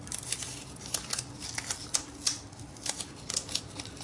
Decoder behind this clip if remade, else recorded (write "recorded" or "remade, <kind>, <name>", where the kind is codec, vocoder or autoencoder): recorded